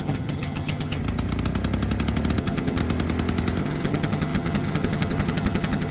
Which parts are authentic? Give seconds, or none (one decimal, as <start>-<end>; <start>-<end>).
1.0-2.4; 2.8-3.6